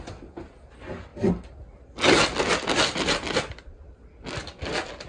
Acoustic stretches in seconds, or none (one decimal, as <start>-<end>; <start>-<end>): 0.0-5.1